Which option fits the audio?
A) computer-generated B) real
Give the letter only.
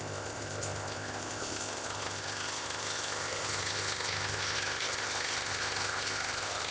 A